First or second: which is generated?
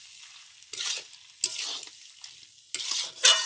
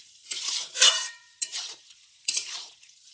second